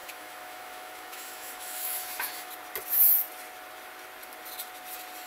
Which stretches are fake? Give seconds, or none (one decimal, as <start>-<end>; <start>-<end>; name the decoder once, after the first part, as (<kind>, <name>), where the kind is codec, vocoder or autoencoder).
0.0-2.5 (autoencoder, DAC-VAE)